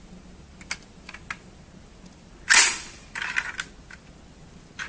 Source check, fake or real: real